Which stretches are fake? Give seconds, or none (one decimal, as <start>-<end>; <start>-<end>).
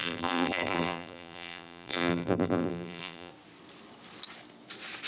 0.0-3.3